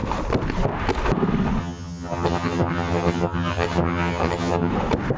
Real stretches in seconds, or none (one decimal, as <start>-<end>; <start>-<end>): 0.0-1.6; 4.7-5.2